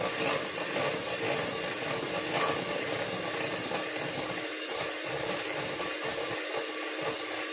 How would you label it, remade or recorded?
recorded